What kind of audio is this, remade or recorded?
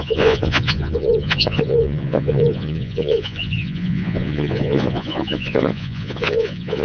remade